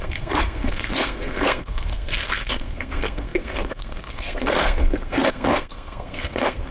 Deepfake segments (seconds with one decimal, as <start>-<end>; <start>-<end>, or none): 0.0-6.7